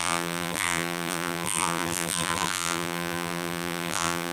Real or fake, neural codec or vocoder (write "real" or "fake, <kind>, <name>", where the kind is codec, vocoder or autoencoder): fake, vocoder, BigVGAN v2